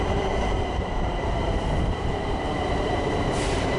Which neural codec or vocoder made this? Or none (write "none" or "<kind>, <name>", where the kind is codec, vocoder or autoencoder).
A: vocoder, BigVGAN v2